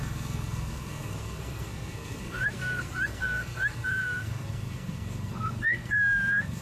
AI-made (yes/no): yes